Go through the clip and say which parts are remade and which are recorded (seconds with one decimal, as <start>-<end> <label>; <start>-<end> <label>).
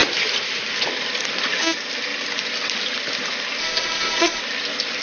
0.0-3.6 recorded; 3.6-4.4 remade; 4.4-5.0 recorded